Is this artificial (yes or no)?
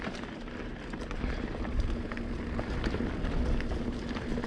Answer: no